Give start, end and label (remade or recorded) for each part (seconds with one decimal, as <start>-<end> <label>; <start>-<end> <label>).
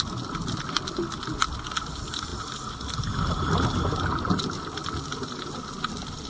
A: 0.0-6.3 recorded